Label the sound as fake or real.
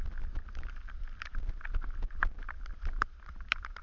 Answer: real